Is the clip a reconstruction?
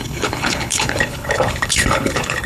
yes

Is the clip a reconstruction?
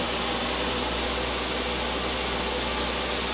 no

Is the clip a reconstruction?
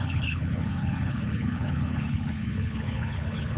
yes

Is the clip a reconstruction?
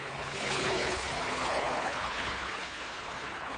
yes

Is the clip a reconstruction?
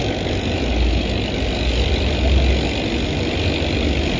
no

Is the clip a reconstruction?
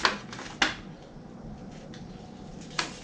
no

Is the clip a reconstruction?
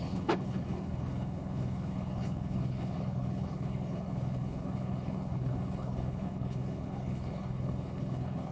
yes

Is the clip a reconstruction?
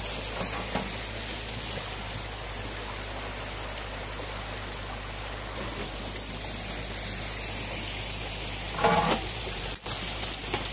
no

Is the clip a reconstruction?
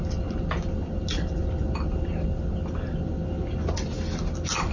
no